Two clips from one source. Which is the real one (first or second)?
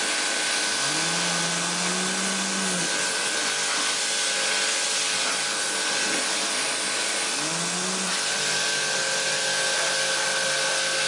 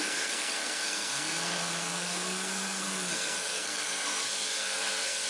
first